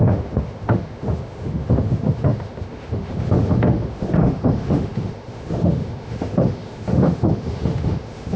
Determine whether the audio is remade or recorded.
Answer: remade